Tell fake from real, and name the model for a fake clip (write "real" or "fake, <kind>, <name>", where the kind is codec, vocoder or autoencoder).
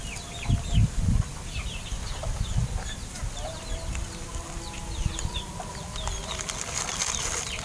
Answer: real